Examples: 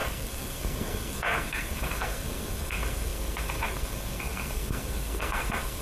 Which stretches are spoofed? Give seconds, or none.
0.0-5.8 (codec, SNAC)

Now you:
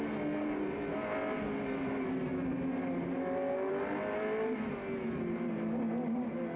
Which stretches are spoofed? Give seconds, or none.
none

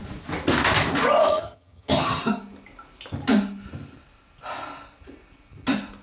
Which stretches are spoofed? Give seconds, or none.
1.3-2.2 (vocoder, HiFi-GAN)

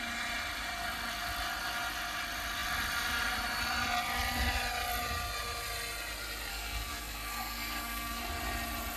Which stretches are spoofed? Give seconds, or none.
6.5-8.2 (codec, SNAC)